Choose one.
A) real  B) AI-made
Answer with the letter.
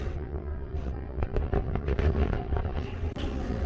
B